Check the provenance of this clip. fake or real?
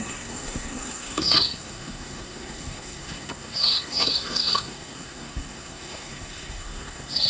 fake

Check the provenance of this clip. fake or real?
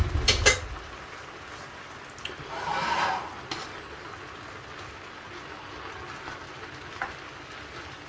real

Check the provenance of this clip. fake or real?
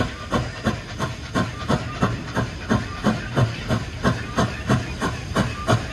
real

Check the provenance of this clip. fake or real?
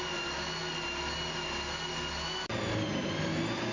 real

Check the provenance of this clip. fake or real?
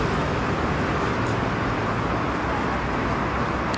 real